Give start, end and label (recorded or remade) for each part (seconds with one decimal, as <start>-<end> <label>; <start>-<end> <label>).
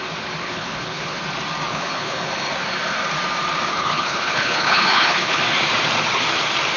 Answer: 0.0-0.4 recorded; 0.4-1.2 remade; 1.2-1.7 recorded; 1.7-2.3 remade; 2.3-3.7 recorded; 3.7-5.4 remade; 5.4-6.8 recorded